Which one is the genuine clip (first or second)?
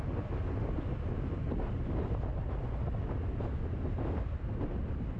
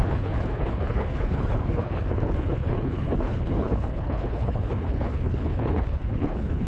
first